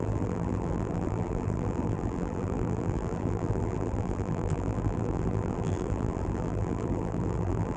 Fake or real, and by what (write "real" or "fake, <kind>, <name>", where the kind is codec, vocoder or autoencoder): fake, vocoder, BigVGAN v2